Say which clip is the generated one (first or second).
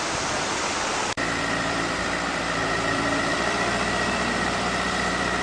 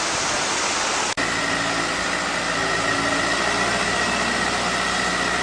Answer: first